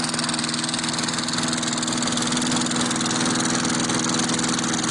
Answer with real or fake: real